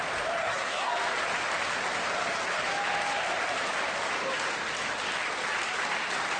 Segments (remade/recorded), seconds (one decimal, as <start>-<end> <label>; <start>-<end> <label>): 0.0-0.4 recorded; 0.4-0.9 remade; 0.9-6.4 recorded